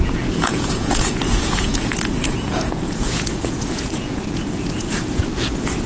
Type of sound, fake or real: fake